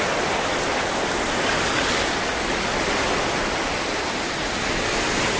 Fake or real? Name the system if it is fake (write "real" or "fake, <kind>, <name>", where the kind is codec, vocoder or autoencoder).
real